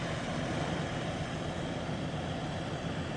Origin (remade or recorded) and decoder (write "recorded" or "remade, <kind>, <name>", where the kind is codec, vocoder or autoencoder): recorded